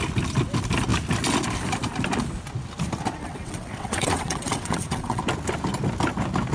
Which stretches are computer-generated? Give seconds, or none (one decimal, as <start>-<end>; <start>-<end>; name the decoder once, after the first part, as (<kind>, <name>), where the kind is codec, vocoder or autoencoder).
3.2-5.2 (vocoder, WaveNeXt)

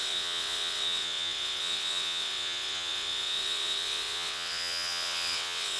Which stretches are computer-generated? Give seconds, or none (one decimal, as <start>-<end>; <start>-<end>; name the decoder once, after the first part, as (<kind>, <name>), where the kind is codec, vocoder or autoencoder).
0.0-5.8 (vocoder, WaveNeXt)

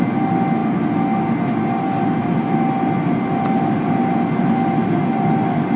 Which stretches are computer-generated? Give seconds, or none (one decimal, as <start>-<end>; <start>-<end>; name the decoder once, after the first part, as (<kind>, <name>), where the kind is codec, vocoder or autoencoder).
none

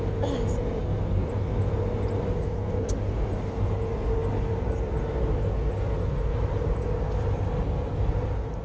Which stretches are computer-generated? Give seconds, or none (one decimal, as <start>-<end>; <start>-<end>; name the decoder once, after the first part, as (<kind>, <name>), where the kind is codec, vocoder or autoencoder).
none

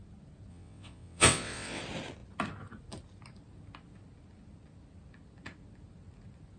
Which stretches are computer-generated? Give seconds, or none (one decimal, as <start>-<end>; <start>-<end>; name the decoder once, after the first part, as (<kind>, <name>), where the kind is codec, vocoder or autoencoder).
0.5-1.8 (vocoder, WaveNeXt)

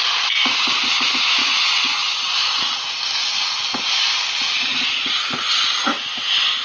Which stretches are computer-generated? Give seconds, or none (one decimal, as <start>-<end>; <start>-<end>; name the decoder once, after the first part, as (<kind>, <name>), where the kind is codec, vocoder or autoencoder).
1.4-2.3 (vocoder, WaveNeXt)

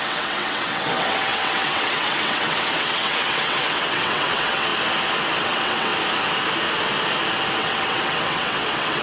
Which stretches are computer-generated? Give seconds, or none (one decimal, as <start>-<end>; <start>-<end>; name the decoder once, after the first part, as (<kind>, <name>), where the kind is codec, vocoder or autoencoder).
0.0-4.7 (vocoder, WaveNeXt); 5.4-5.9; 7.6-9.0

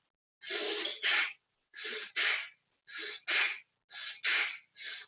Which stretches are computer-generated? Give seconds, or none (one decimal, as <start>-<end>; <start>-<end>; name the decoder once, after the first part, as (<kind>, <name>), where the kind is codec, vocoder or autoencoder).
0.9-2.1 (vocoder, WaveNeXt)